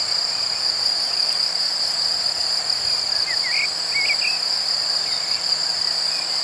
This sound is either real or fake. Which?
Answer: real